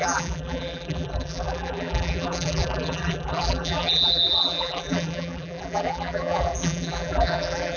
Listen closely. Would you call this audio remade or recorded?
remade